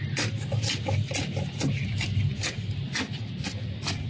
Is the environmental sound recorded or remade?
recorded